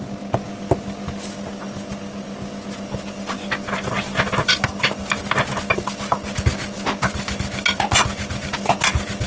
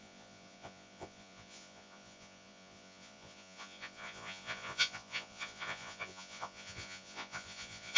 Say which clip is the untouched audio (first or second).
first